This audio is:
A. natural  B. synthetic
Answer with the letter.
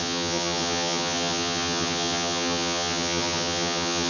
B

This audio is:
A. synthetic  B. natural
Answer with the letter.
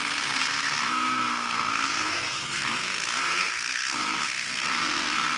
A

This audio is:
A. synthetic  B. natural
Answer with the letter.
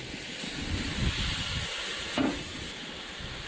B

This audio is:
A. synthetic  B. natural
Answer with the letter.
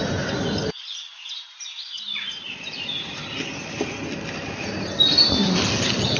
B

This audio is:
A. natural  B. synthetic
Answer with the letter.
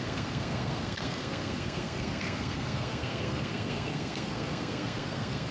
B